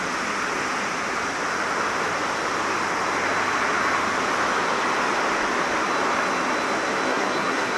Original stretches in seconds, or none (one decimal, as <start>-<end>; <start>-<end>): 0.0-7.1